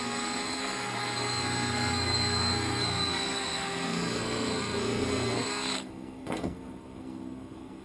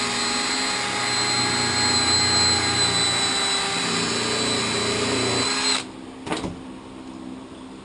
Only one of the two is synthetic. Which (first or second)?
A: first